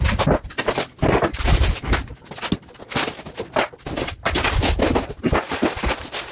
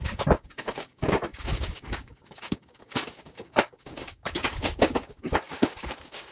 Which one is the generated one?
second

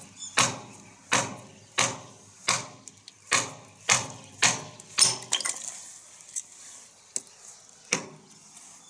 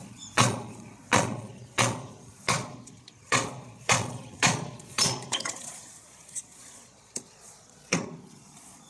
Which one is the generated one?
second